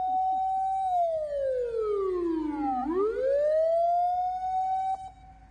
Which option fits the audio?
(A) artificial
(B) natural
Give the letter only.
B